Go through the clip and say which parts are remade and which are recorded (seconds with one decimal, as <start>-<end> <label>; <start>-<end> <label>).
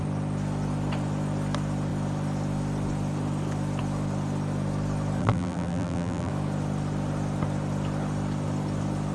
0.0-5.2 recorded; 5.2-6.3 remade; 6.3-9.1 recorded